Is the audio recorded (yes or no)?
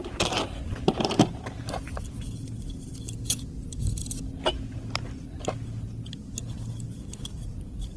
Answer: yes